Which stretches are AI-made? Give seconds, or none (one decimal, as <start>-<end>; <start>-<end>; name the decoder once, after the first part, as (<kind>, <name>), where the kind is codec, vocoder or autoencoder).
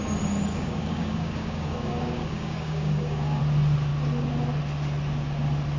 0.5-3.4 (codec, DAC)